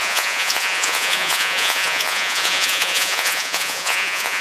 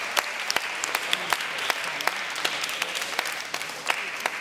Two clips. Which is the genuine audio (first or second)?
second